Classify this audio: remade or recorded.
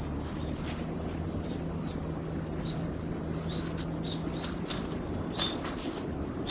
recorded